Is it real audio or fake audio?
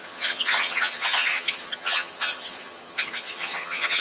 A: fake